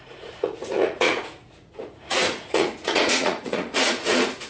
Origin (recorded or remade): remade